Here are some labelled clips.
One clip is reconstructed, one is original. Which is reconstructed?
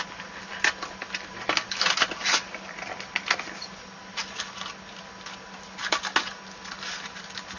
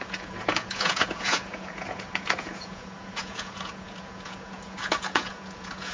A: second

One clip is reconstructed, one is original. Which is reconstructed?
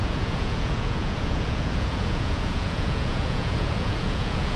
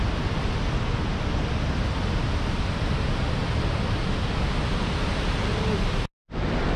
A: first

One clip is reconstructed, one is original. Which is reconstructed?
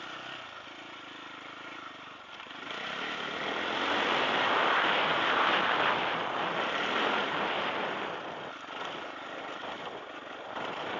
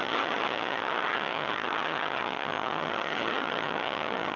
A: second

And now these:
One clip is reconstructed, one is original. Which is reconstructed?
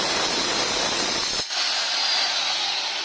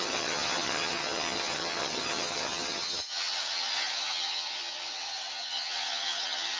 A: second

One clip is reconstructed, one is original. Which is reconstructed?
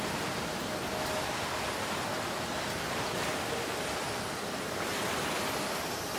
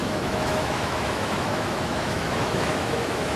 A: second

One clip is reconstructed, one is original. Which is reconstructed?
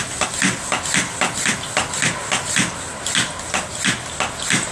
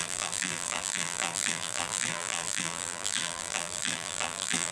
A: second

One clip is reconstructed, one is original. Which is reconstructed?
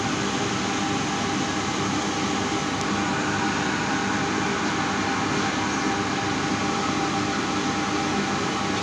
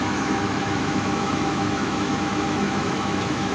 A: second